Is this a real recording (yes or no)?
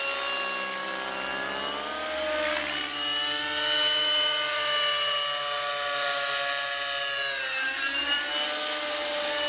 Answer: yes